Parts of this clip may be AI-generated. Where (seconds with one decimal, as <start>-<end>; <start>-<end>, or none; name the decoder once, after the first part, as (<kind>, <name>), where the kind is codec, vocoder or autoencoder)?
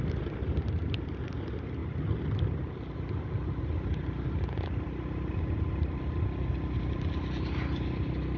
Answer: none